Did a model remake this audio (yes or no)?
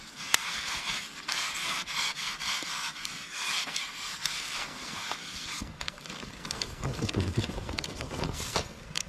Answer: yes